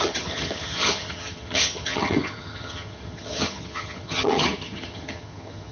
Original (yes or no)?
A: no